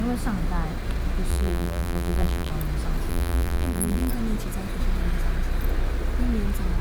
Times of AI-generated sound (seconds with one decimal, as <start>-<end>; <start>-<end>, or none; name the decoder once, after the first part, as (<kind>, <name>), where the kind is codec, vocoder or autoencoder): 1.3-2.5 (vocoder, BigVGAN v2); 3.1-4.1

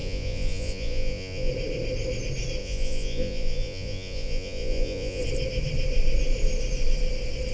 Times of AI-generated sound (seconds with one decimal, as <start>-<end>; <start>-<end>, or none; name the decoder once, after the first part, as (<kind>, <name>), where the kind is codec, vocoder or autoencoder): 0.0-1.5 (vocoder, Vocos); 2.6-5.2

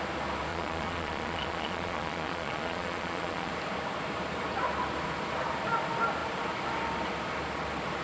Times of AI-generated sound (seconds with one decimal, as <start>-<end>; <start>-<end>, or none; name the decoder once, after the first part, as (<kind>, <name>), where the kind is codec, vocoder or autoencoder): 0.5-3.5 (vocoder, Vocos)

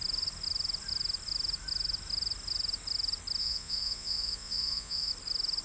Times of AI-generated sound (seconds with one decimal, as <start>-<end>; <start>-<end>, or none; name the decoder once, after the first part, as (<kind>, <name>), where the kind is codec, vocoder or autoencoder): 3.4-5.1 (vocoder, Vocos)

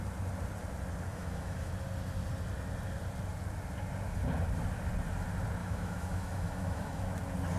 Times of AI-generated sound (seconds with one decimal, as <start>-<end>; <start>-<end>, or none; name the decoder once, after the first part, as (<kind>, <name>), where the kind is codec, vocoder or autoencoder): 1.1-1.7 (autoencoder, DAC-VAE); 5.6-7.0